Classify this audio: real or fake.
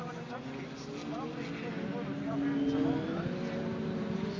real